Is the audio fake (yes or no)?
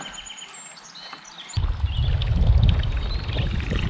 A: no